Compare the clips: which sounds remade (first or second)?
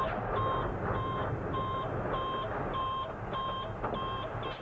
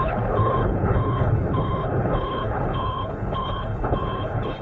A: second